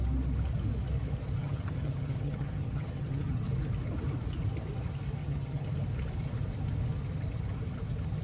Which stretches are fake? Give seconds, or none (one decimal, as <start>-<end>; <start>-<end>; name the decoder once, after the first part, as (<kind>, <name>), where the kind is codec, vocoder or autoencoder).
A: 1.4-3.5 (vocoder, HiFi-GAN); 5.2-5.7